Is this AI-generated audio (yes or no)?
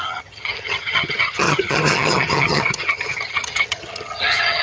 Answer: yes